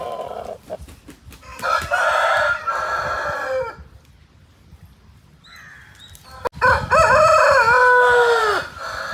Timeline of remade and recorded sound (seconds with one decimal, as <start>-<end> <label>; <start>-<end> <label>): 0.0-9.1 recorded